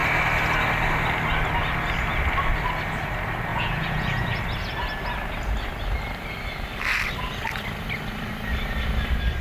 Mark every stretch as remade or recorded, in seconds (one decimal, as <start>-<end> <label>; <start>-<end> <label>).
0.0-3.5 recorded; 3.5-4.4 remade; 4.4-9.4 recorded